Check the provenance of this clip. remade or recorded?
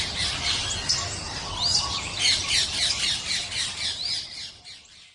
recorded